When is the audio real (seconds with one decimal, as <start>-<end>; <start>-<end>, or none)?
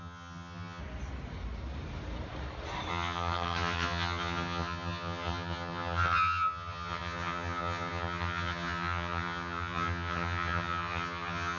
0.8-2.9